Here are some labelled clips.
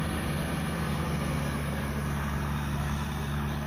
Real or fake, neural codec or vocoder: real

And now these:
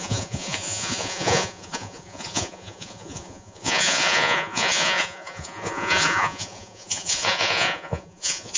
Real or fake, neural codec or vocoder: fake, vocoder, Vocos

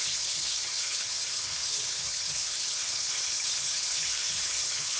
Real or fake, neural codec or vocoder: fake, codec, HILCodec